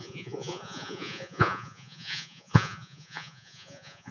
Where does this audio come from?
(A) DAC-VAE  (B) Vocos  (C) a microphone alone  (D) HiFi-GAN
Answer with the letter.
B